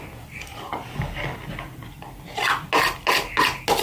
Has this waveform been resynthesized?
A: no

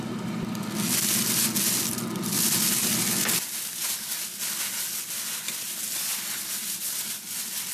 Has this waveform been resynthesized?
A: no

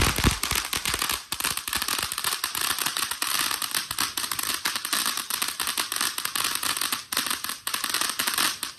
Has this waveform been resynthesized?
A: no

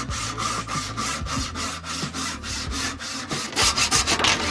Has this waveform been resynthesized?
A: no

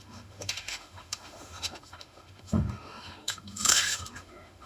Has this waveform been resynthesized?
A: yes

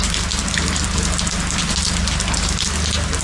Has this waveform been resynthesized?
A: no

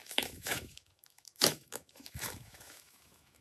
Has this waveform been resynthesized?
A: yes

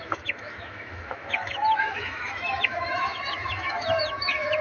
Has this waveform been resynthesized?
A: yes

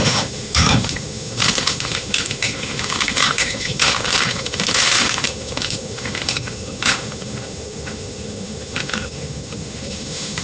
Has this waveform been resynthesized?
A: yes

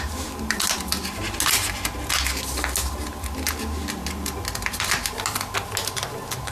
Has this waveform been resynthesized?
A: no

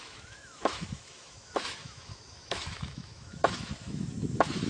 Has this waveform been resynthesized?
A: yes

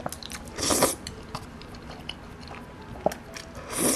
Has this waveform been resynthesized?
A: no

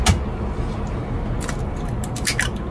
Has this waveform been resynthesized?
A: no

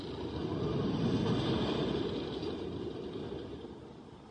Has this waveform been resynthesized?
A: no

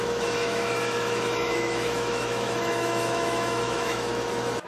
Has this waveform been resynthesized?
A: yes